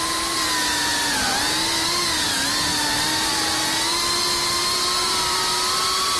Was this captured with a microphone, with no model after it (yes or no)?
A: yes